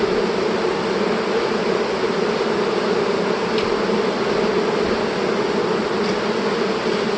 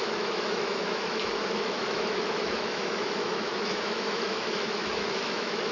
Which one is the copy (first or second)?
second